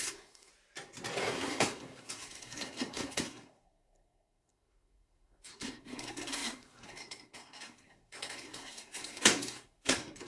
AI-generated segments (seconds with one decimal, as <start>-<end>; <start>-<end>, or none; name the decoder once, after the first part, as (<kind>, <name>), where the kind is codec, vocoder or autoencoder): 0.0-0.5 (codec, SNAC); 1.2-10.3